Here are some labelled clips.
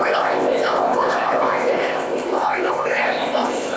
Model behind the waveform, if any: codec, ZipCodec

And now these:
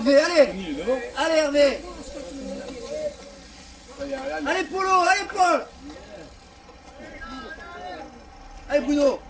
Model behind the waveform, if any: none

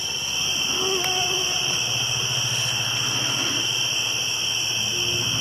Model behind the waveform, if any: none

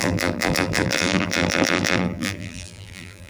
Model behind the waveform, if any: vocoder, BigVGAN v2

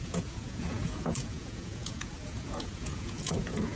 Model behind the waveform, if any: vocoder, Vocos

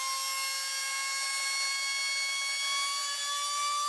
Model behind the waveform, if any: none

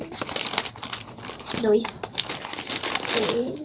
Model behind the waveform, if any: none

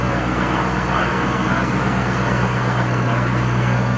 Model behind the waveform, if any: codec, SNAC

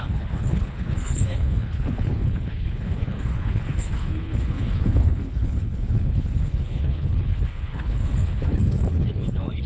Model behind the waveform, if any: codec, HILCodec